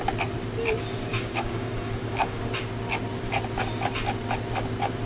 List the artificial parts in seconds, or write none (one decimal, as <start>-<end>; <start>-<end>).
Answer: 1.1-2.4